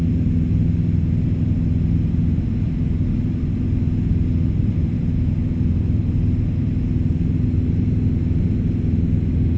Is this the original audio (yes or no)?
yes